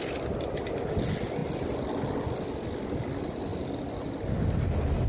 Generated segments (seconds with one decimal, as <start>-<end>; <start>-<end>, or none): 3.5-4.3